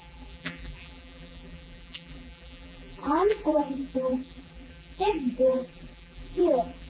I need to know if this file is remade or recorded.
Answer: remade